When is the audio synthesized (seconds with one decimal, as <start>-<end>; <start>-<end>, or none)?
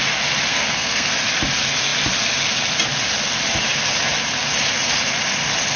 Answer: 0.5-1.1